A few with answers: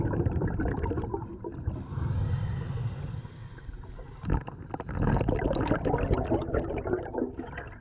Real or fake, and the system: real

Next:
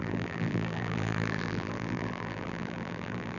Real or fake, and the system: fake, vocoder, BigVGAN v2